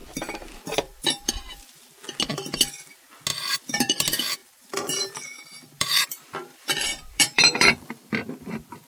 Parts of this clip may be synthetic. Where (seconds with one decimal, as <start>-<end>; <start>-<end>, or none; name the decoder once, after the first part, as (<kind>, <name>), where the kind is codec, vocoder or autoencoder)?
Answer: 0.0-1.3 (vocoder, BigVGAN v2); 3.3-4.0; 4.4-8.5